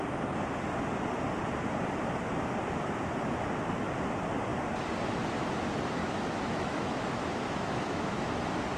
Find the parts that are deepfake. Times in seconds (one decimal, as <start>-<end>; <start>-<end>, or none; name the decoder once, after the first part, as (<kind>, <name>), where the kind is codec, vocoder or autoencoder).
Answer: 6.0-8.3 (autoencoder, DAC-VAE)